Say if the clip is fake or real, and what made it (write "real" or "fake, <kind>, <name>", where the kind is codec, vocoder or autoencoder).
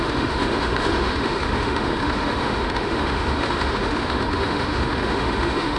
fake, autoencoder, DAC-VAE